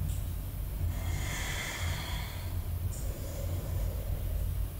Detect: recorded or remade recorded